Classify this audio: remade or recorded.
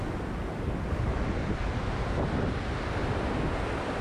recorded